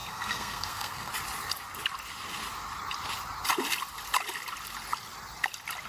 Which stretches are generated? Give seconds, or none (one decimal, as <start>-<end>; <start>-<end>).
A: 0.0-1.1